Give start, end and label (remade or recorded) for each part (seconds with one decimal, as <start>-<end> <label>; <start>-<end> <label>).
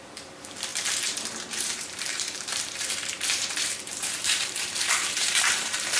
0.0-0.7 remade; 0.7-1.4 recorded; 1.4-6.0 remade